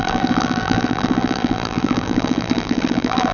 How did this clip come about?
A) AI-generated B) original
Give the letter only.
A